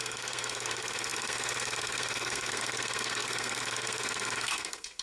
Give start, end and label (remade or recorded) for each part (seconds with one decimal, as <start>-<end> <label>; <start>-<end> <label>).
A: 0.0-5.0 remade

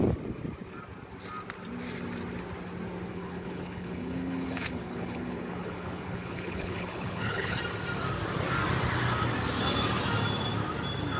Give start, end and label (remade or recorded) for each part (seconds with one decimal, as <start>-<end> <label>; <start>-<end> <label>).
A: 0.0-3.1 recorded; 3.1-7.6 remade; 7.6-11.2 recorded

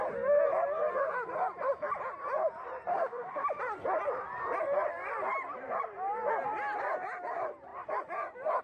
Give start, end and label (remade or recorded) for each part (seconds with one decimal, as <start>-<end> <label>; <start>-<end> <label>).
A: 0.0-2.9 recorded; 2.9-3.6 remade; 3.6-8.6 recorded

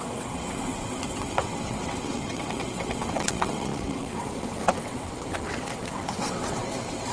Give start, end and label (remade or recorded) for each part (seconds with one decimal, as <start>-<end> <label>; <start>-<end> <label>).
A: 0.0-7.1 remade

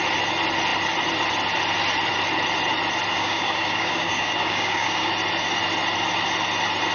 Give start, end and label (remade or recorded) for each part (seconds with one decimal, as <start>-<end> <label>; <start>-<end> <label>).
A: 0.0-3.1 recorded; 3.1-5.1 remade; 5.1-6.9 recorded